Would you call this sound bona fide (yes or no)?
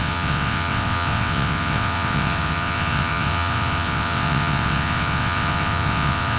no